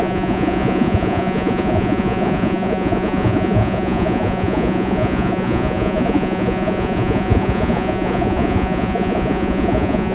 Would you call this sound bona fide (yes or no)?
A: no